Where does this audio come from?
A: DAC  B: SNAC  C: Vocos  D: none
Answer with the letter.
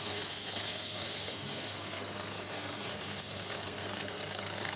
B